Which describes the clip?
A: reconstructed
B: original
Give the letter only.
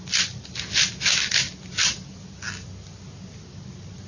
B